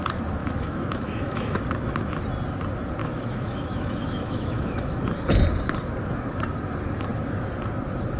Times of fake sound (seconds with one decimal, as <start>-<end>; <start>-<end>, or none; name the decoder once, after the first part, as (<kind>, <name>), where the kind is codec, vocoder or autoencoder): 0.4-1.6 (autoencoder, DAC-VAE); 3.0-5.0